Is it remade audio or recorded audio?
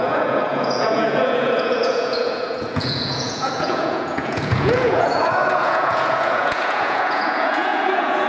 remade